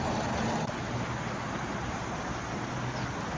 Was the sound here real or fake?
real